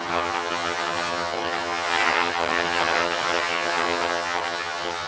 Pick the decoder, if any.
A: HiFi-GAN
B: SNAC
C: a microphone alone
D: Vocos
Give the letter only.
A